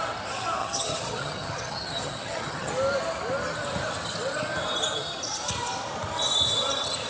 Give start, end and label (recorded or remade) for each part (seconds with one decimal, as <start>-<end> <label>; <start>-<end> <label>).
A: 0.0-0.6 recorded; 0.6-2.7 remade; 2.7-7.1 recorded